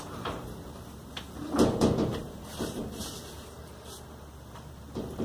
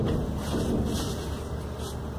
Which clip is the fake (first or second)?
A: first